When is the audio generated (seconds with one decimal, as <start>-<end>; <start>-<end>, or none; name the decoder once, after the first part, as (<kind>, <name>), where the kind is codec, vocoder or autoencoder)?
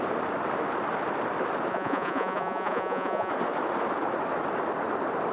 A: 1.7-3.3 (vocoder, Vocos)